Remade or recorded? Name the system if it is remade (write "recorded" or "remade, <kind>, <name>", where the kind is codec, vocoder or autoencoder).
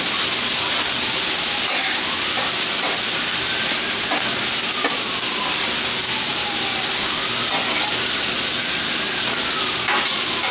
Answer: recorded